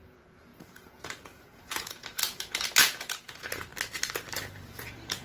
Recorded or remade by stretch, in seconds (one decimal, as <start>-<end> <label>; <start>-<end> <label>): 0.0-3.7 remade; 3.7-4.7 recorded; 4.7-5.2 remade